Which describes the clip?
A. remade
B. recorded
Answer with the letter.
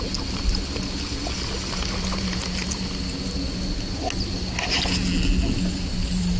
B